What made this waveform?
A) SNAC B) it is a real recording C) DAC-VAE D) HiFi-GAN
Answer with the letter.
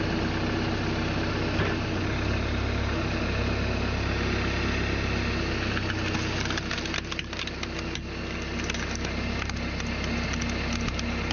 B